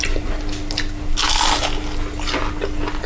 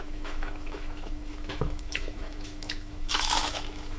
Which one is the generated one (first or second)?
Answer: second